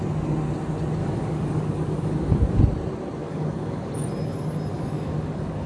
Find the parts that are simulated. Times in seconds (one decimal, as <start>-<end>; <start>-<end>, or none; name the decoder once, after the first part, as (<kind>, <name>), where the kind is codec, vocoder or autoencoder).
1.0-2.6 (codec, DAC); 3.2-3.9; 4.7-5.7